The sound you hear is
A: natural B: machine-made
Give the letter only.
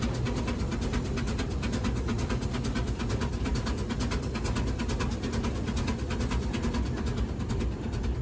A